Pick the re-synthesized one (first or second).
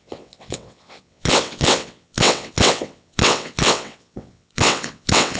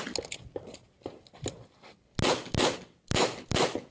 first